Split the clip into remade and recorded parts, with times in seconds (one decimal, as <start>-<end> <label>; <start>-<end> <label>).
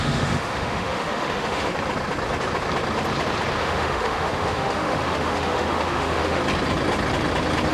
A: 0.0-1.7 remade; 1.7-3.6 recorded; 3.6-6.4 remade; 6.4-7.7 recorded